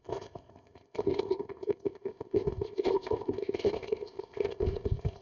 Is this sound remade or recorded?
remade